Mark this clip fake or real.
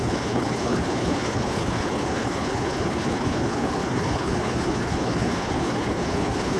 fake